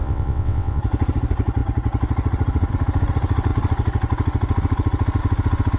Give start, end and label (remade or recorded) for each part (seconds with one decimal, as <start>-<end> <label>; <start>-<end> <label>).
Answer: 0.0-0.8 remade; 0.8-5.8 recorded